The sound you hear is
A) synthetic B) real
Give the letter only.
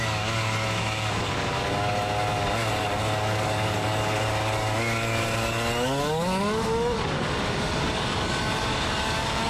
A